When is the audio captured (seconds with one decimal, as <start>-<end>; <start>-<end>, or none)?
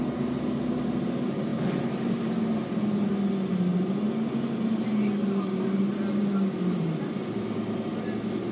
0.0-8.5